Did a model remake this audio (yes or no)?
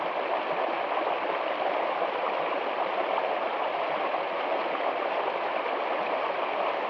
no